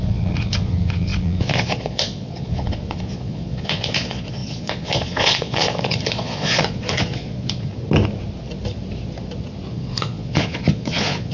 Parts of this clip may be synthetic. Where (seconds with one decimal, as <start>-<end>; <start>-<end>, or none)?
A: 0.0-7.7; 9.7-11.3